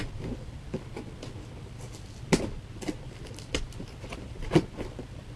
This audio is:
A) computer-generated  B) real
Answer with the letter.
B